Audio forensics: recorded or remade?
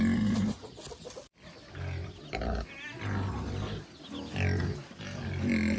recorded